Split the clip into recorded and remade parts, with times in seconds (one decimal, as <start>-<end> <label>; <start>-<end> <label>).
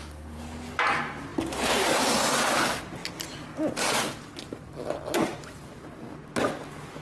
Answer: 0.0-7.0 recorded